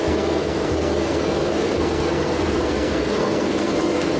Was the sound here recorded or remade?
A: remade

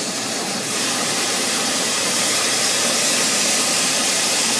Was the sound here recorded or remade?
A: remade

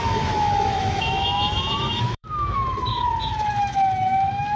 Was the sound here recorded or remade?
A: remade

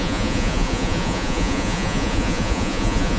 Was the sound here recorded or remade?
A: remade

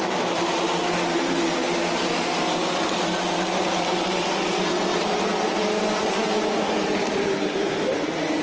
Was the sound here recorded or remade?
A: recorded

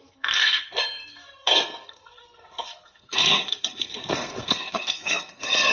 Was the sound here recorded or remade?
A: remade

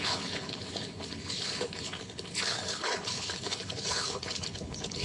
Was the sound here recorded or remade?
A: remade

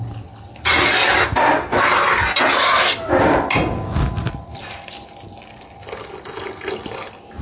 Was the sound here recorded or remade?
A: recorded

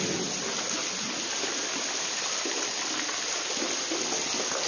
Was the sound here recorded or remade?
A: recorded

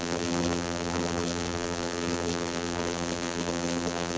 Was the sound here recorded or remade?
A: remade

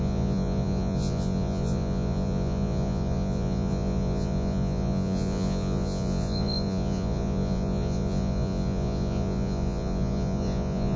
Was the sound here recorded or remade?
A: remade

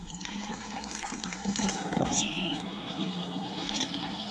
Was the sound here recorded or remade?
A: remade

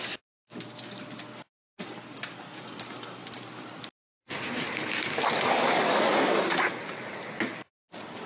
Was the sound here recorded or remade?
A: recorded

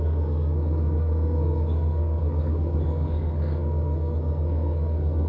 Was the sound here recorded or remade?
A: remade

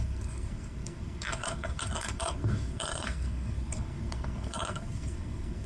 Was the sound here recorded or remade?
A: remade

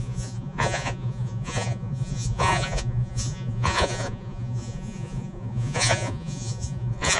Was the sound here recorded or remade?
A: remade